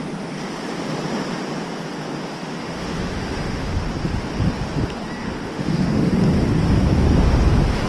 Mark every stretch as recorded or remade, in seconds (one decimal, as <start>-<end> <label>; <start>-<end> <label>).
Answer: 0.0-2.6 recorded; 2.6-3.8 remade; 3.8-5.2 recorded; 5.2-6.1 remade; 6.1-7.9 recorded